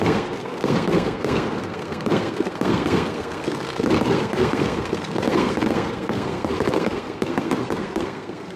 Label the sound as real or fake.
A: fake